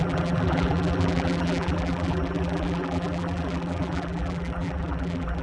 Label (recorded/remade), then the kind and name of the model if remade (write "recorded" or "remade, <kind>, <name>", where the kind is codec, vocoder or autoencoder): remade, vocoder, BigVGAN v2